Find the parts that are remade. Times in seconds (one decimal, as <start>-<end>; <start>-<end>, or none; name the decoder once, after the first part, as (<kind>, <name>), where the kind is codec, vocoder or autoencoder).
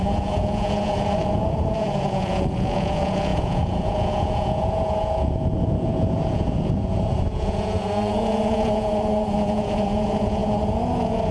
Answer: 0.0-11.3 (vocoder, Vocos)